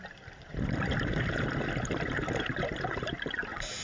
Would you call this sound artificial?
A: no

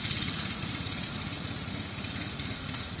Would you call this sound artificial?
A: yes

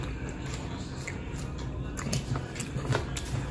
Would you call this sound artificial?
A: no